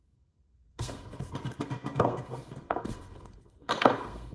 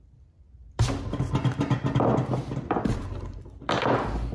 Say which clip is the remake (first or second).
first